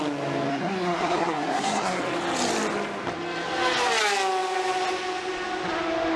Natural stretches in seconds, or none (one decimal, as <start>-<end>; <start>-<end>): 0.0-0.5; 2.0-6.2